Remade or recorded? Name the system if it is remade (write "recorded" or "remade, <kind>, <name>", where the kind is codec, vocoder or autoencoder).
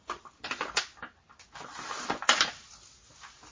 recorded